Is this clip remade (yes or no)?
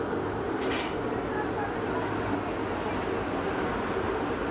no